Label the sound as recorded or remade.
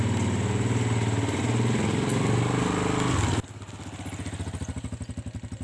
recorded